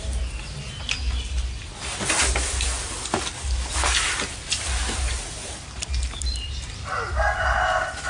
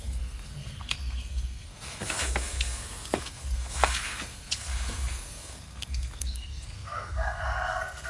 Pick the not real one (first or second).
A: second